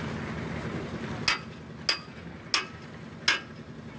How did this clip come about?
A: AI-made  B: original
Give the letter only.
B